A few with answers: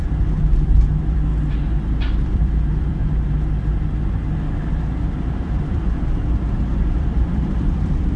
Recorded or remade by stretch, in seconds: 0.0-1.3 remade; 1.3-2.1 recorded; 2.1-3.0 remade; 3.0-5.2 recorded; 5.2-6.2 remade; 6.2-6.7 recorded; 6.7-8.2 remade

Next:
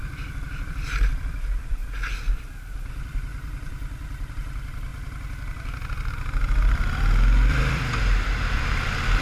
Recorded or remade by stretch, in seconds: 0.0-1.8 remade; 1.8-2.8 recorded; 2.8-4.9 remade; 4.9-6.1 recorded; 6.1-9.2 remade

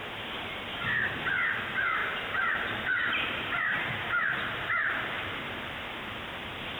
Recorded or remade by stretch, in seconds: 0.0-2.0 recorded; 2.0-5.3 remade; 5.3-6.8 recorded

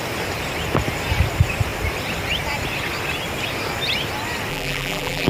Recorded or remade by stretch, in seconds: 0.0-4.5 recorded; 4.5-5.3 remade

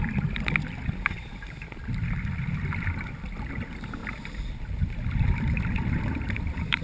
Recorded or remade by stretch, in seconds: 0.0-4.0 recorded; 4.0-6.8 remade

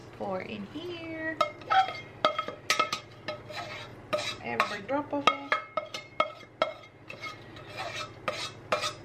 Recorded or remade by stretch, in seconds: 0.0-3.9 recorded; 3.9-4.9 remade; 4.9-9.0 recorded

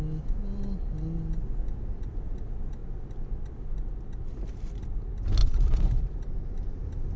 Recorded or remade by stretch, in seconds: 0.0-5.4 recorded; 5.4-6.0 remade; 6.0-7.2 recorded

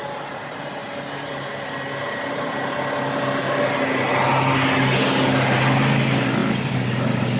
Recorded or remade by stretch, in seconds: 0.0-7.4 recorded